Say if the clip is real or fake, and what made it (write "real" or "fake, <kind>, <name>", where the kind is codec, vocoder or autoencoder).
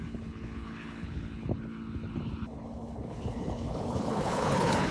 fake, codec, HILCodec